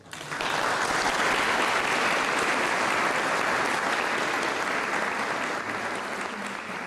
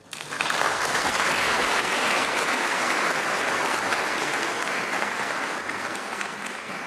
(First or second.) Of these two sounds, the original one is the first